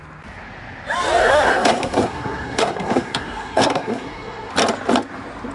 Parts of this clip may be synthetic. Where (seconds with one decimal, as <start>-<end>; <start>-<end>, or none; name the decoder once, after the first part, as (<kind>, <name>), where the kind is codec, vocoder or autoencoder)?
1.2-4.5 (codec, SNAC)